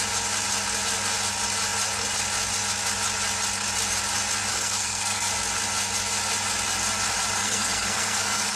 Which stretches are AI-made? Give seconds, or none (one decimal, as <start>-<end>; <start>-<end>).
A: 4.5-5.3; 7.4-8.6